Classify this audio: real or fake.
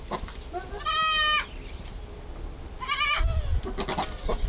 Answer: real